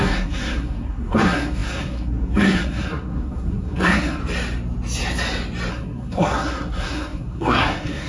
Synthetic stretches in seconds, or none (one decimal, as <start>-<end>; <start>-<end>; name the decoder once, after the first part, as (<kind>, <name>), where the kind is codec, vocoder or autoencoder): 0.0-4.2 (codec, SNAC); 5.7-8.1